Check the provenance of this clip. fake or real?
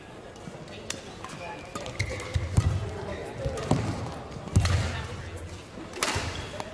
real